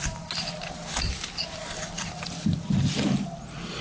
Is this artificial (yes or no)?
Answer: no